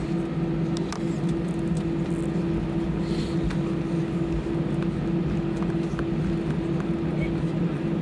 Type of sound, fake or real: real